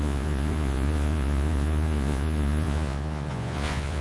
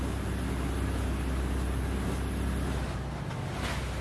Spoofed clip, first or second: first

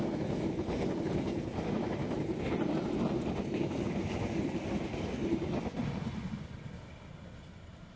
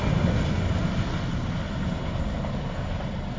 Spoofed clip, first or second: first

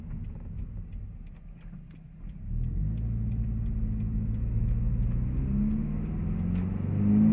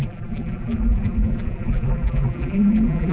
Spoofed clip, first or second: second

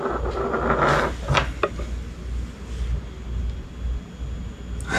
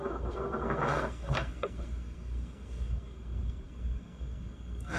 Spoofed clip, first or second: second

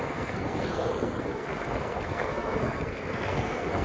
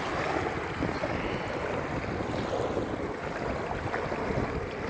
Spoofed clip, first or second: first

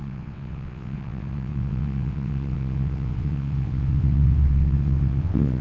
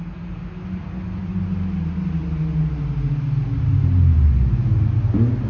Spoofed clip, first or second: first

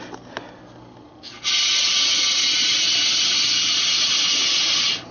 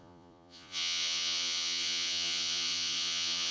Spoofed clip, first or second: second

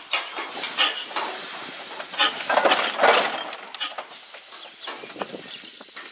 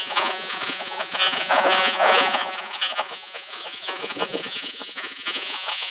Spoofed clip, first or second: second